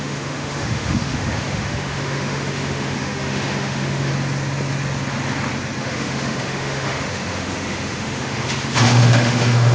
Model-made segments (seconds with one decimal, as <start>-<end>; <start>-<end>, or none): 0.0-4.1; 5.8-9.7